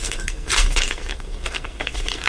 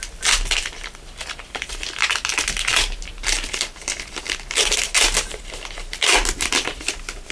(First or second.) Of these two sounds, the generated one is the first